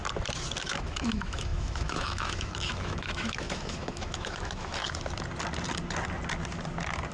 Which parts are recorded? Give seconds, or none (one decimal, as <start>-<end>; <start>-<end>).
0.0-0.6; 4.8-7.1